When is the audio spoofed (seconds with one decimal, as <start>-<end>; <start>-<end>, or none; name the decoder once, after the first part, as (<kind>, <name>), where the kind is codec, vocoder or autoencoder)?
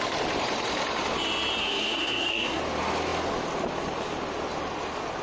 1.6-2.6 (codec, SNAC)